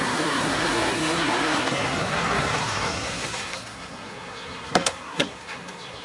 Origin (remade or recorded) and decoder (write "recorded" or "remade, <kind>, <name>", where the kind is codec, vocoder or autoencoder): remade, codec, SNAC